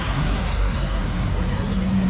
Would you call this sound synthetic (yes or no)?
yes